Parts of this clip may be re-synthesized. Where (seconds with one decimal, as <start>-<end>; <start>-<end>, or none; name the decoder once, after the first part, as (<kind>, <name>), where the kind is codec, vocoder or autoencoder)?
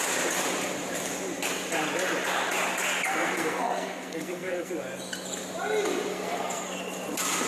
3.1-4.7 (codec, SNAC); 6.1-6.8